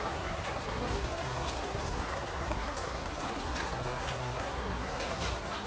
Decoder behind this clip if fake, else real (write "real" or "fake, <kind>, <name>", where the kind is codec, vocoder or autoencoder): fake, codec, SNAC